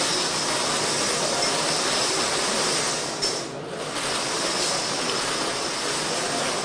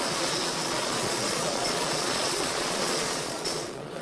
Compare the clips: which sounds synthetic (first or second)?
second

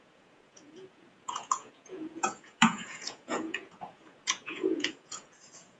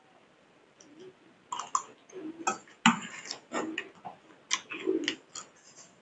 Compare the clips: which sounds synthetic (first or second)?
first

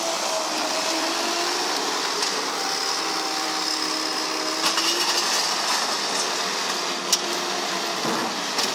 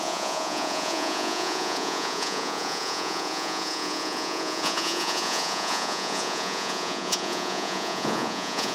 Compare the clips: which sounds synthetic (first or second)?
second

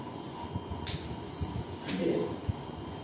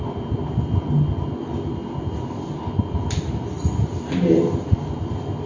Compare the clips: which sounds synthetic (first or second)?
first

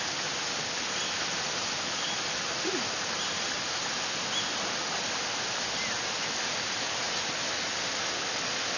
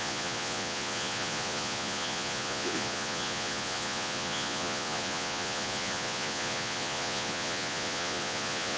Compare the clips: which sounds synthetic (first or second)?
second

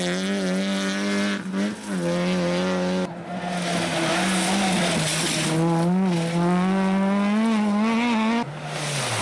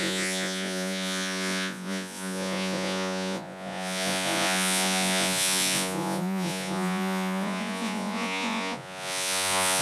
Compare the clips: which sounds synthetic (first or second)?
second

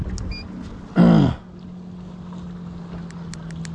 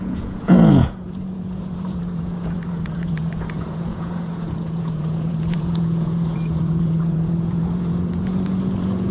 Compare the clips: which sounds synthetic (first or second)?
second